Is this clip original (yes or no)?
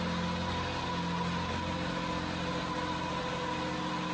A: yes